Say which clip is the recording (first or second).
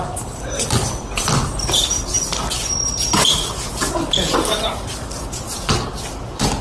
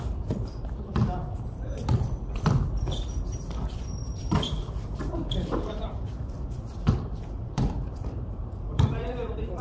first